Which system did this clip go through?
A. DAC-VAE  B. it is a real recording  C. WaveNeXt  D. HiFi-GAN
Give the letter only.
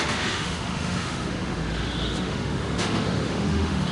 A